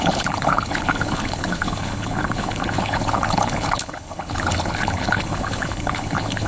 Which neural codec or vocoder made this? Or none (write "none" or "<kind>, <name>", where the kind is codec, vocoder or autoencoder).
codec, HILCodec